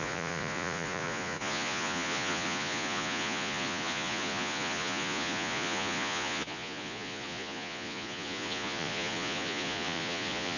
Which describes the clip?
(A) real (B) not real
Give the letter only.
B